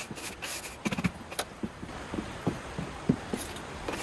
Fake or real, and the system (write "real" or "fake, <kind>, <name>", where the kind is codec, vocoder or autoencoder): real